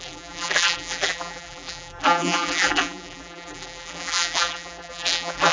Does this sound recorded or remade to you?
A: remade